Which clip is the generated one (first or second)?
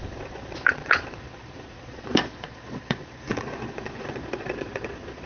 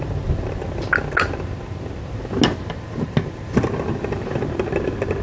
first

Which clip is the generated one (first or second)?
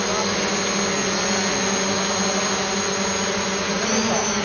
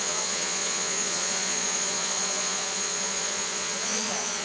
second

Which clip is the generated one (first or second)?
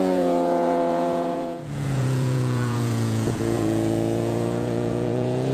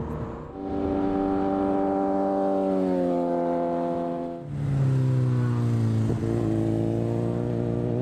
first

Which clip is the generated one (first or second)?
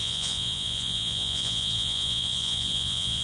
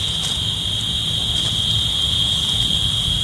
first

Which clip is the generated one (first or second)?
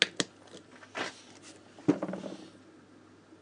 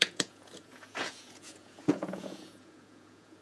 second